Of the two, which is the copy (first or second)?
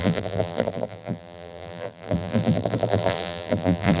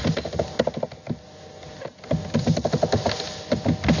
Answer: first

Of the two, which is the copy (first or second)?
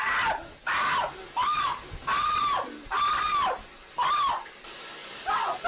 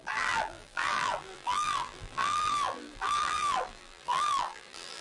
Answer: second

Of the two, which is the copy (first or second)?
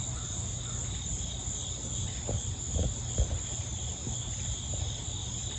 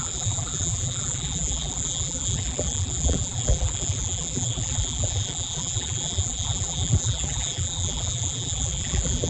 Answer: second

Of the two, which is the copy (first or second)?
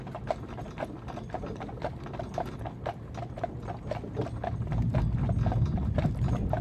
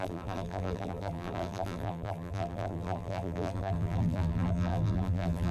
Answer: second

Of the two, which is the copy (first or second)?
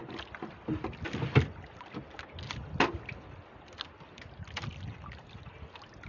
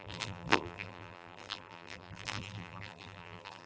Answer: second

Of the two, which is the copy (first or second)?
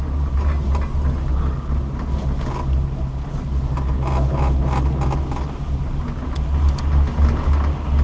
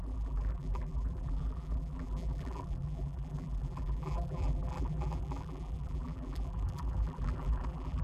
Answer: second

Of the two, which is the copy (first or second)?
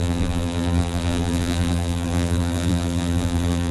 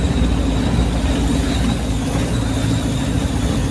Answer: first